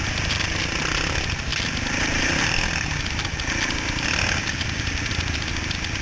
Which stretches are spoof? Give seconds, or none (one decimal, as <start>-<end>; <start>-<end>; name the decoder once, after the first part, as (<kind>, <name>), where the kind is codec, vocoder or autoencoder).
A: none